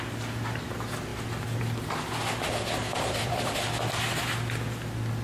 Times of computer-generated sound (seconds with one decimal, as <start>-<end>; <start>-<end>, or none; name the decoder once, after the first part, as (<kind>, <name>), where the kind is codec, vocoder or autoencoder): 2.9-4.0 (vocoder, BigVGAN v2)